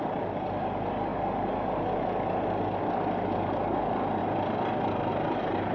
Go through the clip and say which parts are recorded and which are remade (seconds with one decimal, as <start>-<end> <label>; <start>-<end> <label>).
0.0-5.7 recorded